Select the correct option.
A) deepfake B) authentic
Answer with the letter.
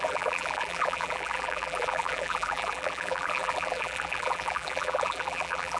A